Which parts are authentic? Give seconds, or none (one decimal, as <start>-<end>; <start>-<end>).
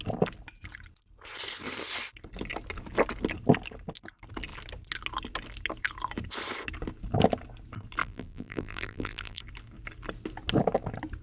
0.0-8.0; 9.4-11.2